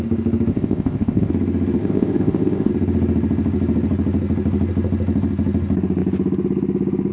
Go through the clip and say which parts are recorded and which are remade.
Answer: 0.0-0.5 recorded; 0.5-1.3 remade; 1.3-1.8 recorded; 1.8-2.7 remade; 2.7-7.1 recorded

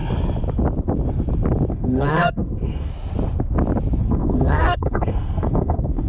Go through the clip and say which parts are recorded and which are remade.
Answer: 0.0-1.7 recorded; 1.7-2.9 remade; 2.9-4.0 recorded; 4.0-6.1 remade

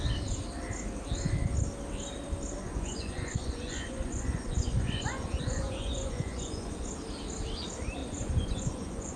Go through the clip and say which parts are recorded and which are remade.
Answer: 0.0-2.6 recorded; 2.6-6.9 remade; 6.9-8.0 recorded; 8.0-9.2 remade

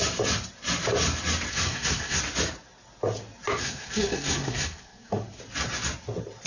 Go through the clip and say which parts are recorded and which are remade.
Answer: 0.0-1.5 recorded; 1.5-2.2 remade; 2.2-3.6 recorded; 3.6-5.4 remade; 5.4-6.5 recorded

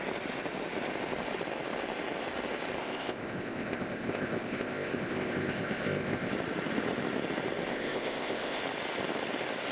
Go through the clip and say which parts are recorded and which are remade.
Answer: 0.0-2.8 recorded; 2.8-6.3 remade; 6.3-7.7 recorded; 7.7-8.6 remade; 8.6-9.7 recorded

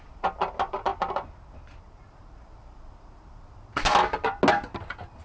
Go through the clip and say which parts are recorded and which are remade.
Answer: 0.0-5.2 recorded